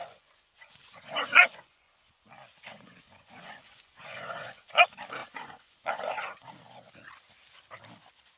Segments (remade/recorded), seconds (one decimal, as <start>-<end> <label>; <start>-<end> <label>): 0.0-2.2 remade; 2.2-2.7 recorded; 2.7-4.8 remade; 4.8-5.2 recorded; 5.2-6.5 remade; 6.5-8.4 recorded